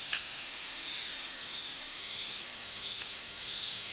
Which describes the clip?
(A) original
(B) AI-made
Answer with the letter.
B